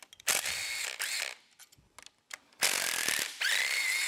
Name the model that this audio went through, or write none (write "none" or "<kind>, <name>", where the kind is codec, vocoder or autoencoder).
none